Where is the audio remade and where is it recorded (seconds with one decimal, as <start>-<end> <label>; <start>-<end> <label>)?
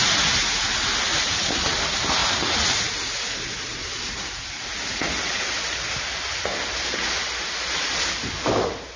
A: 0.0-2.2 recorded; 2.2-2.9 remade; 2.9-3.8 recorded; 3.8-4.4 remade; 4.4-9.0 recorded